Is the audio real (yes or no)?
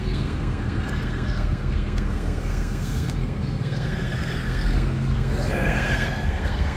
no